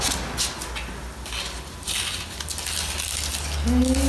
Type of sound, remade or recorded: recorded